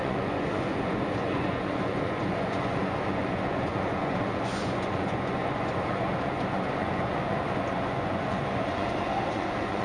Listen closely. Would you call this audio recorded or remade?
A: remade